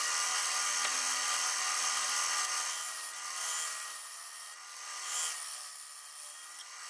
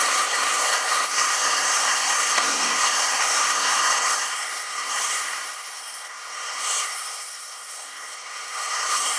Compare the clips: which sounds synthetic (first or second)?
second